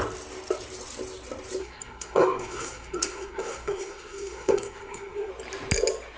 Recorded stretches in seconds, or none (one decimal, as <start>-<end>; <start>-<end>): 0.0-1.6; 5.3-6.2